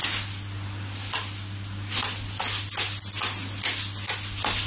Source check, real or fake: real